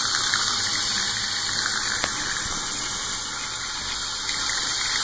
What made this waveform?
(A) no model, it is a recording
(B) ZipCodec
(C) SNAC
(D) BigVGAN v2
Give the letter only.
A